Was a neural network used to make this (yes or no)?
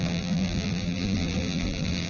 yes